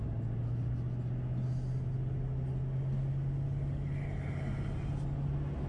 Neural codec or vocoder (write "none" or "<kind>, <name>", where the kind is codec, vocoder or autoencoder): none